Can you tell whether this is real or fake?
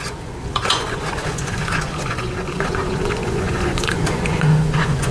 fake